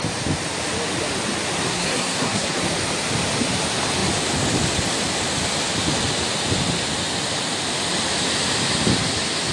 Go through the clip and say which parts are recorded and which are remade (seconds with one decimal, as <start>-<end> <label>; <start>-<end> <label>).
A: 0.0-1.7 recorded; 1.7-2.6 remade; 2.6-9.5 recorded